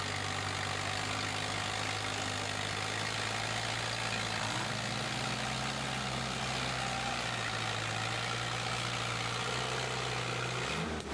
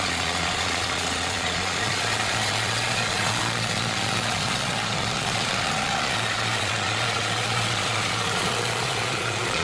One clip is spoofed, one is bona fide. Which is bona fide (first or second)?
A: first